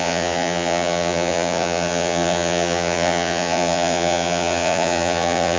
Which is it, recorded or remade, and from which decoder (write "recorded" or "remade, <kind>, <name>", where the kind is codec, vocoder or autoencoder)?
remade, vocoder, Vocos